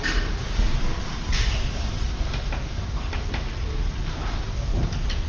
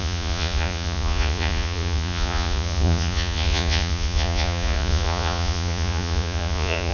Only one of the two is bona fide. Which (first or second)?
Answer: first